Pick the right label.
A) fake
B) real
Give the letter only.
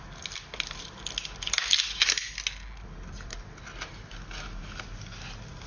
B